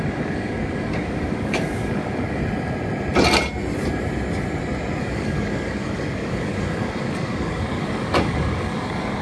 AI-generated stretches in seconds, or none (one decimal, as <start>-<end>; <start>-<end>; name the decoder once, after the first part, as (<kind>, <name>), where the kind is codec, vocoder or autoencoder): 0.0-2.4 (codec, DAC); 5.0-9.2